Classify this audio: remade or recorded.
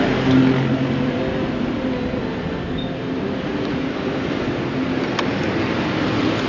recorded